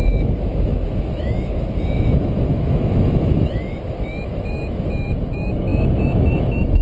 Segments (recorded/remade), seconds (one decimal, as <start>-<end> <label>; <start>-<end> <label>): 0.0-6.8 remade